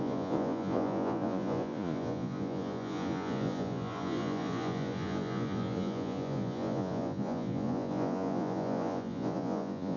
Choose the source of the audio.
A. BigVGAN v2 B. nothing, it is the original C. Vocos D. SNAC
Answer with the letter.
C